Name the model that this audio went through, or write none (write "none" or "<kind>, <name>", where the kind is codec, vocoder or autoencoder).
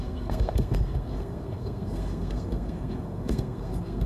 codec, SNAC